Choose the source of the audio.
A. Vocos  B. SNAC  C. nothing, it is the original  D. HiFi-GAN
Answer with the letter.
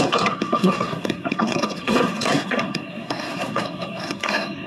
B